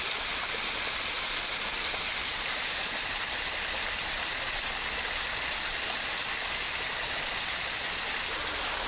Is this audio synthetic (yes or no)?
no